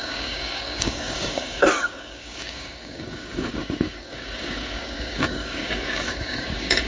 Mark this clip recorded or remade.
remade